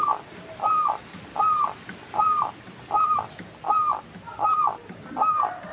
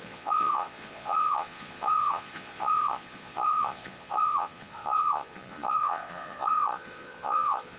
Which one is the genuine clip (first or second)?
first